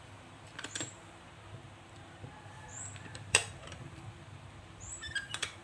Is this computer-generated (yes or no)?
yes